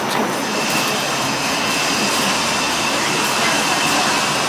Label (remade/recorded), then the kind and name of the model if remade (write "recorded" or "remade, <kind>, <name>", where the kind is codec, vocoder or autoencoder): recorded